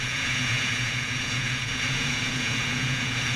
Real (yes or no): no